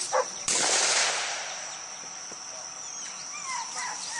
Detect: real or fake real